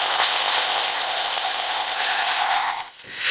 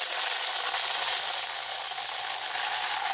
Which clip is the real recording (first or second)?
second